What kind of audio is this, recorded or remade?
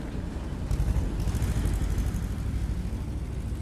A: recorded